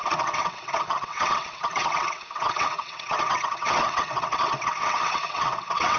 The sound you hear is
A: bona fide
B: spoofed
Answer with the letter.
B